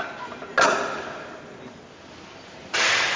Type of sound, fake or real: real